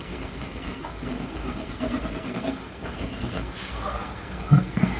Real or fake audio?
fake